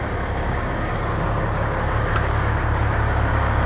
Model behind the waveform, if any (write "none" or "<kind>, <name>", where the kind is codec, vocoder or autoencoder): codec, DAC